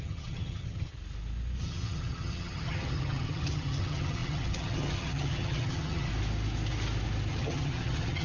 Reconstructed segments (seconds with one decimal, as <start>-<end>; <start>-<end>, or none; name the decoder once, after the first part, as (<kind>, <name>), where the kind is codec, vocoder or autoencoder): 0.0-0.9 (vocoder, HiFi-GAN); 1.6-6.1; 7.3-8.2